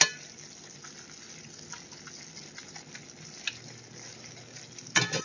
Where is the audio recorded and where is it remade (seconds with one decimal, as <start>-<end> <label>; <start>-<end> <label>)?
0.0-5.2 recorded